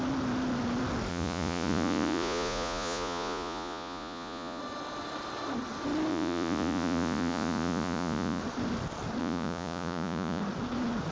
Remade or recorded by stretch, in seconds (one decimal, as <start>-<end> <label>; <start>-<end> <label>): 0.0-1.1 recorded; 1.1-4.6 remade; 4.6-6.1 recorded; 6.1-8.4 remade; 8.4-9.2 recorded; 9.2-10.4 remade; 10.4-11.1 recorded